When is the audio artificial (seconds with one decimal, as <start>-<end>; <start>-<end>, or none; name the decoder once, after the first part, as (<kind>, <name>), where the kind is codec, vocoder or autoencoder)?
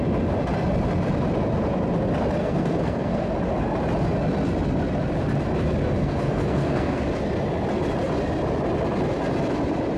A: 2.4-3.3 (codec, SNAC); 6.0-7.0